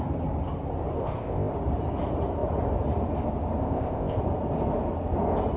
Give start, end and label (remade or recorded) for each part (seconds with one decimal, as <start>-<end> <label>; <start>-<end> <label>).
0.0-1.0 recorded; 1.0-1.5 remade; 1.5-3.6 recorded; 3.6-4.2 remade; 4.2-5.6 recorded